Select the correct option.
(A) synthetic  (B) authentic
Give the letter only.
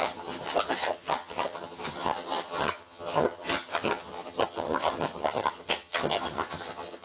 A